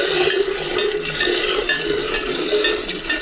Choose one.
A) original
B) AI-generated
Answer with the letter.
A